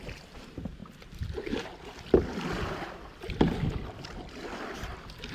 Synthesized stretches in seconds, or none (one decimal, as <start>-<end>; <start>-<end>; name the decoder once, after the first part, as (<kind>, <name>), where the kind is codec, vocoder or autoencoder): none